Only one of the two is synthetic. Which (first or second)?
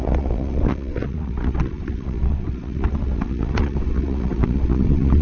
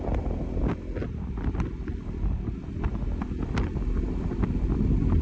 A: first